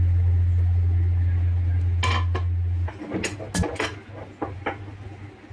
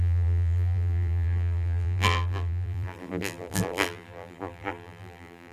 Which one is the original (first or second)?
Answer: first